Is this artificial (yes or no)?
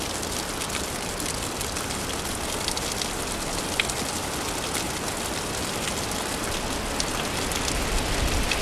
no